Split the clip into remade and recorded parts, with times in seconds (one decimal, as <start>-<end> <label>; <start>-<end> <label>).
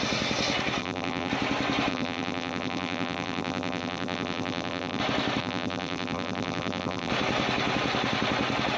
0.0-0.8 recorded; 0.8-1.3 remade; 1.3-1.9 recorded; 1.9-5.0 remade; 5.0-5.4 recorded; 5.4-7.1 remade; 7.1-8.8 recorded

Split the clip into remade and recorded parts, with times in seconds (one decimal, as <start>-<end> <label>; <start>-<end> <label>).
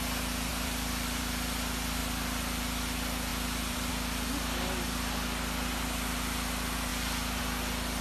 0.0-0.5 recorded; 0.5-1.2 remade; 1.2-2.0 recorded; 2.0-2.6 remade; 2.6-3.3 recorded; 3.3-3.9 remade; 3.9-6.9 recorded; 6.9-7.4 remade; 7.4-8.0 recorded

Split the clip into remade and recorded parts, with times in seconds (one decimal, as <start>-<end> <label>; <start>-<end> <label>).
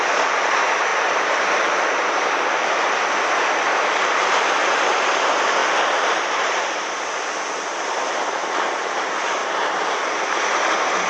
0.0-0.9 recorded; 0.9-3.5 remade; 3.5-5.6 recorded; 5.6-6.4 remade; 6.4-11.1 recorded